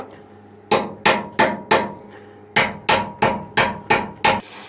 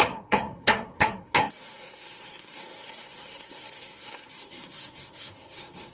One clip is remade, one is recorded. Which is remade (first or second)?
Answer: second